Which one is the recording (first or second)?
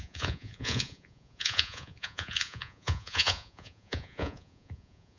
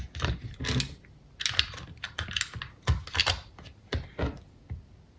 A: second